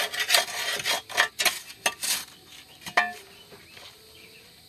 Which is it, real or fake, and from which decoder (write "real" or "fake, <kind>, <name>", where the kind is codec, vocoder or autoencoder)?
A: real